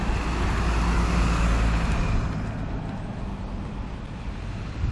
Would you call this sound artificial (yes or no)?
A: no